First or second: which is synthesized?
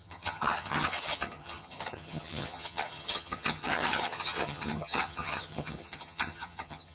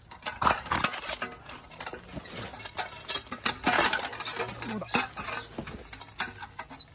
first